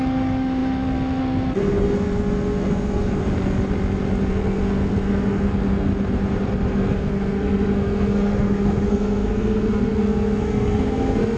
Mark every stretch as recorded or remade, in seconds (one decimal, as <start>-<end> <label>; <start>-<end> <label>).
0.0-3.2 remade; 3.2-4.3 recorded; 4.3-5.9 remade; 5.9-6.7 recorded; 6.7-11.4 remade